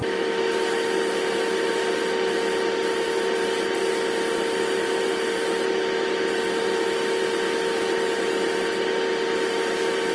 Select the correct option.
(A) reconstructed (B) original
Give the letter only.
B